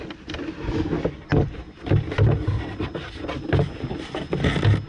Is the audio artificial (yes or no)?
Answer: no